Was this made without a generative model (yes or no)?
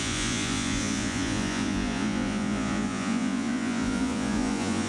no